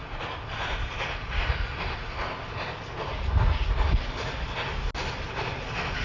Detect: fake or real real